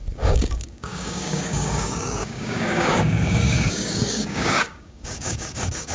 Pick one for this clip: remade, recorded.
remade